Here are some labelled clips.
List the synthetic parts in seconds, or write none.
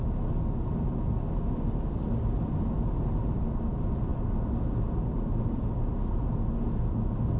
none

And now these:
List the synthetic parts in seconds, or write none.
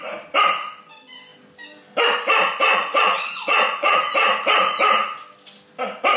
2.7-4.0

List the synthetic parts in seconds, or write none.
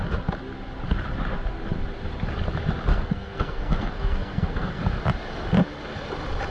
2.9-4.8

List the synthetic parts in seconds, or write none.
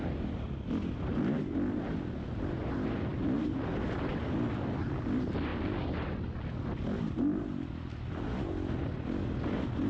none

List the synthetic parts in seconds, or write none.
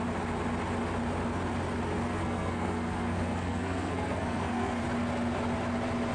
2.1-4.8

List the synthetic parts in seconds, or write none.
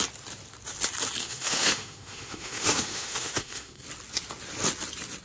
1.2-3.8